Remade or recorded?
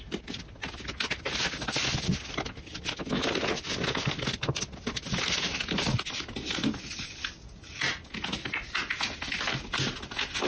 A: recorded